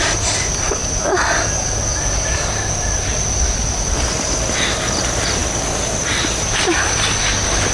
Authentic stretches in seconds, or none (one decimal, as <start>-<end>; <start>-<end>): 0.0-7.7